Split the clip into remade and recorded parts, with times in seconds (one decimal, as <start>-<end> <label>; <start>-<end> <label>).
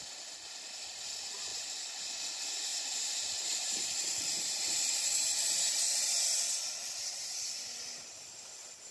0.0-2.7 recorded; 2.7-6.2 remade; 6.2-8.9 recorded